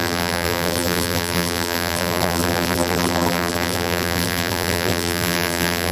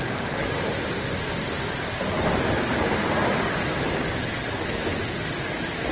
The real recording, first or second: second